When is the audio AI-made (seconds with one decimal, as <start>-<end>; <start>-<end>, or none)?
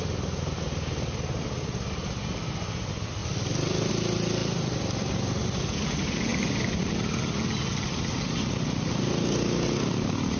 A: 3.2-3.9; 4.4-5.6; 6.3-6.9